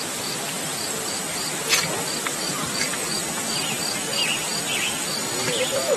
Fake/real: real